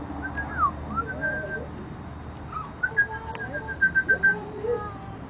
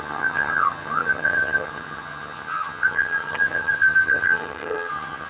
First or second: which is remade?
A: second